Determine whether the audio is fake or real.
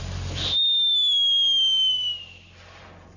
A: real